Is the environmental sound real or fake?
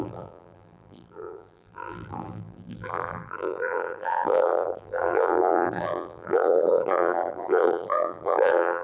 fake